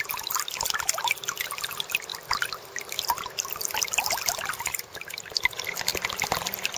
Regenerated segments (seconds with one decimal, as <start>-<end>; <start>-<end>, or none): none